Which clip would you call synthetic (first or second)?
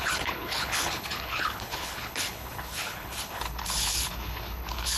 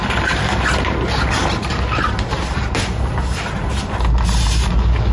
first